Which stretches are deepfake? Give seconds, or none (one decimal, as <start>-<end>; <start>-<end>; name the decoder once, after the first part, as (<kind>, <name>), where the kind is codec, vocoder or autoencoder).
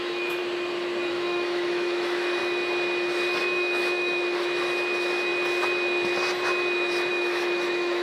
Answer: 0.0-0.4 (autoencoder, DAC-VAE); 1.1-2.4; 3.4-5.3; 7.1-8.0